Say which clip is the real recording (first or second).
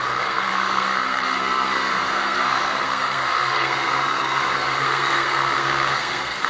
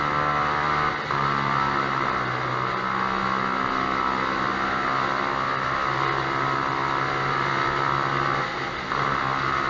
second